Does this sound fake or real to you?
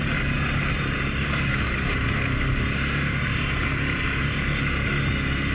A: real